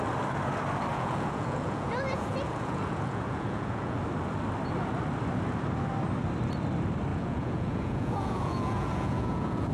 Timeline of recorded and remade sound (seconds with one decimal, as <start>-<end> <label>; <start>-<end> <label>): 0.0-0.9 recorded; 0.9-4.0 remade; 4.0-7.1 recorded; 7.1-9.7 remade